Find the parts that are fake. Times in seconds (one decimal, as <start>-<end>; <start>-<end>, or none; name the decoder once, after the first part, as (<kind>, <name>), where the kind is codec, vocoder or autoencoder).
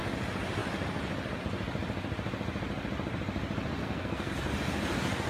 3.8-4.3 (codec, SNAC)